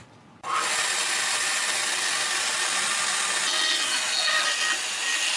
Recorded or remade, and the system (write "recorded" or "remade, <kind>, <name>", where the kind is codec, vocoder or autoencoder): recorded